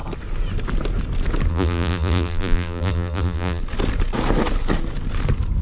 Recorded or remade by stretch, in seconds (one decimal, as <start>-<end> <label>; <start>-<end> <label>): 0.0-1.5 recorded; 1.5-3.6 remade; 3.6-5.6 recorded